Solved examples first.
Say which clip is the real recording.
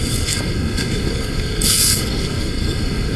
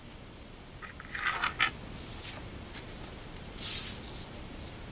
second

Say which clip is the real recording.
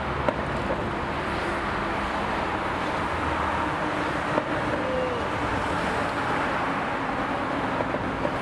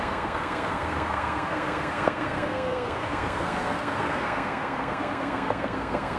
first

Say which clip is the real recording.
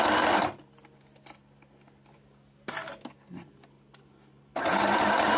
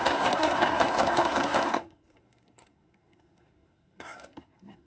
first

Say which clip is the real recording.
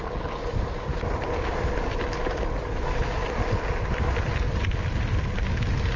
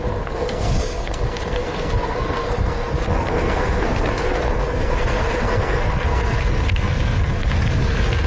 first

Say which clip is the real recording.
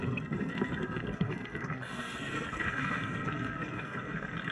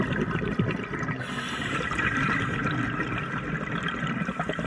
second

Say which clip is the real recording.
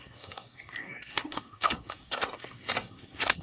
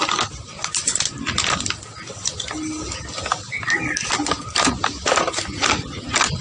second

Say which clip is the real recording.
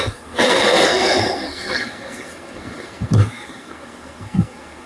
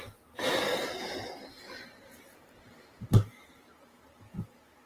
second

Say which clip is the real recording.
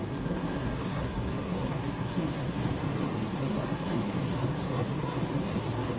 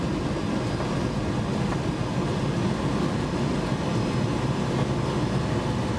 second